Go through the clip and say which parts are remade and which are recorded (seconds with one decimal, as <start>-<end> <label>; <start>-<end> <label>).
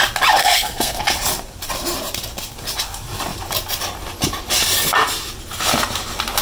0.0-0.4 recorded; 0.4-1.0 remade; 1.0-6.4 recorded